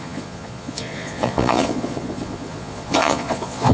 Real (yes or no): no